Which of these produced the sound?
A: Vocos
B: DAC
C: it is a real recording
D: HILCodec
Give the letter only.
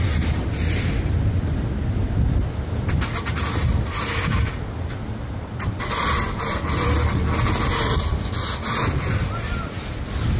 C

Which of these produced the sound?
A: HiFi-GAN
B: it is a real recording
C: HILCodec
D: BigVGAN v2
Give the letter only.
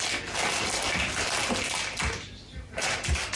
B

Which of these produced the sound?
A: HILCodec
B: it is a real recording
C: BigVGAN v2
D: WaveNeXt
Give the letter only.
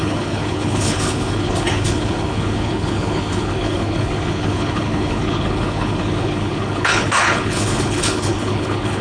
A